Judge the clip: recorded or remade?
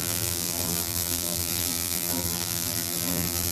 remade